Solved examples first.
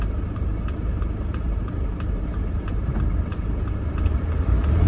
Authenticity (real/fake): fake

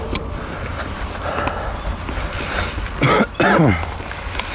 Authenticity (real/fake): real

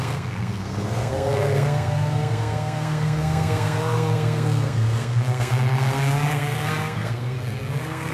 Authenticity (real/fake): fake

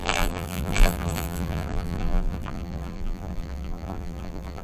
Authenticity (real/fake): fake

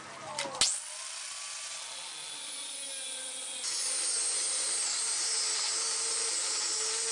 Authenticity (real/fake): real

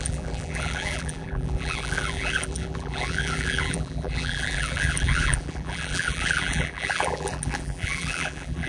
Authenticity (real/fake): fake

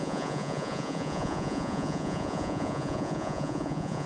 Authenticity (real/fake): fake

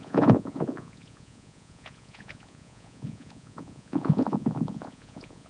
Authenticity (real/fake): fake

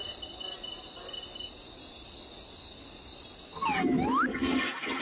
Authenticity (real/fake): real